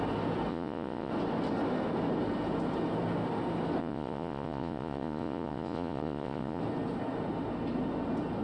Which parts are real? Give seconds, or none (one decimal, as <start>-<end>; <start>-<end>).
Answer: 0.0-0.5; 1.1-3.8; 6.6-8.4